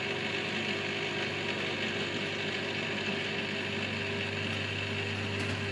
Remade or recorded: recorded